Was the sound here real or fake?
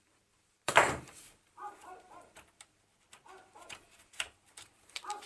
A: fake